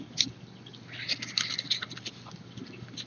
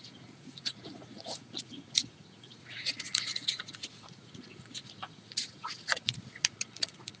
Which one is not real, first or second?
second